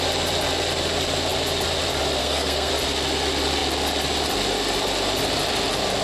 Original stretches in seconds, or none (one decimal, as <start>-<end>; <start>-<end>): 0.0-2.2; 2.7-6.0